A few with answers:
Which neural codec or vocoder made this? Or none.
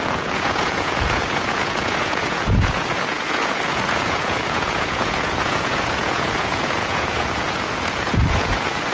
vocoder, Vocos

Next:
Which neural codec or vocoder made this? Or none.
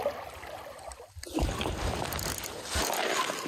vocoder, BigVGAN v2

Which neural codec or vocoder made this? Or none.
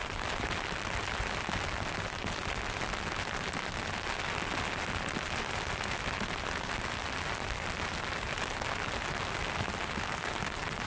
none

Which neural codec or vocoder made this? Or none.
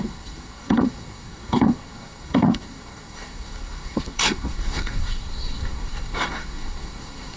codec, SNAC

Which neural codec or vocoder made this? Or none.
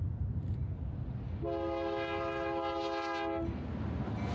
none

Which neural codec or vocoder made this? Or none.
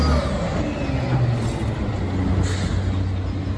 none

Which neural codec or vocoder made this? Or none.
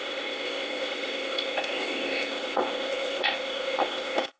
codec, ZipCodec